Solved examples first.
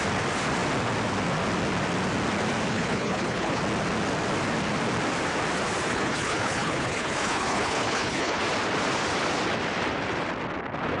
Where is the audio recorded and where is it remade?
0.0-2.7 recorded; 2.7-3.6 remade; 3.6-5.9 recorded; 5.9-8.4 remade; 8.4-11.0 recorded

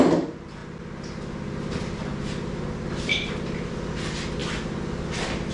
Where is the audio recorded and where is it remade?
0.0-5.5 recorded

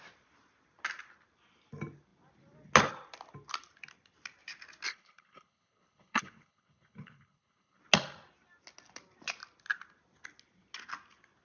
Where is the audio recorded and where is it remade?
0.0-4.9 recorded; 4.9-7.8 remade; 7.8-11.4 recorded

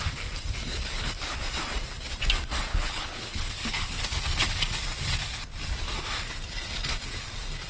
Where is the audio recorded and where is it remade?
0.0-0.7 recorded; 0.7-1.4 remade; 1.4-2.7 recorded; 2.7-4.0 remade; 4.0-7.7 recorded

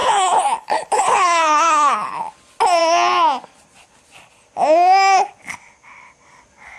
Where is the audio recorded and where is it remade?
0.0-2.2 remade; 2.2-6.8 recorded

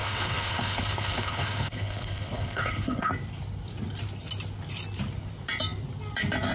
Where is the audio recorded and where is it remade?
0.0-3.1 remade; 3.1-6.5 recorded